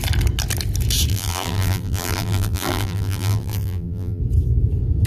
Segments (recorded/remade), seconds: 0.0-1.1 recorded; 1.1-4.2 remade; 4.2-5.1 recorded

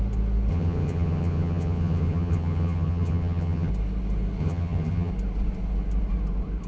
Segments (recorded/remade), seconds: 0.0-0.5 recorded; 0.5-3.7 remade; 3.7-4.4 recorded; 4.4-5.1 remade; 5.1-6.7 recorded

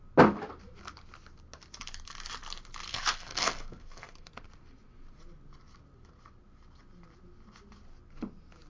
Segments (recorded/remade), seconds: 0.0-2.9 recorded; 2.9-4.3 remade; 4.3-8.7 recorded

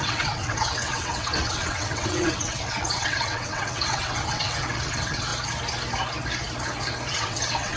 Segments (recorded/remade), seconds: 0.0-5.3 remade; 5.3-7.1 recorded; 7.1-7.8 remade